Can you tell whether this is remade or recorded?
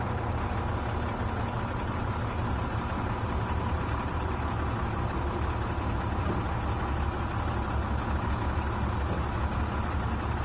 recorded